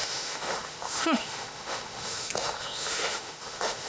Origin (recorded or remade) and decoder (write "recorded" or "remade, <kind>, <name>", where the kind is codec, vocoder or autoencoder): remade, autoencoder, DAC-VAE